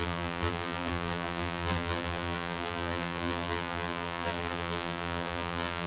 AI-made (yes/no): yes